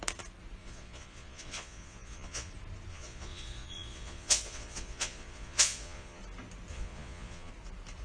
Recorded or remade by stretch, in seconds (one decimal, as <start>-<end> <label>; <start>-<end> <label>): 0.0-0.6 recorded; 0.6-2.5 remade; 2.5-2.9 recorded; 2.9-6.2 remade; 6.2-6.7 recorded; 6.7-7.5 remade; 7.5-8.0 recorded